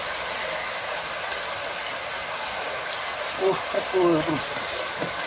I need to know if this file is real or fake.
real